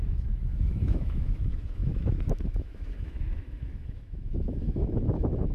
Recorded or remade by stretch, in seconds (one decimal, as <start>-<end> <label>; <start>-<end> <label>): 0.0-5.5 remade